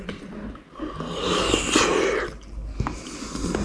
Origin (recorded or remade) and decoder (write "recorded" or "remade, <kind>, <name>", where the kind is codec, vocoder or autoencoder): recorded